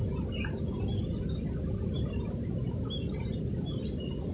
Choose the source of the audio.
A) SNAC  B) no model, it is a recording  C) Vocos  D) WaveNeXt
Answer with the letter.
B